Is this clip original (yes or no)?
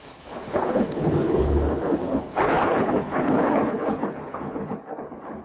no